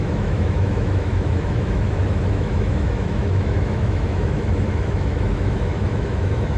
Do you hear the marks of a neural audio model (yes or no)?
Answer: yes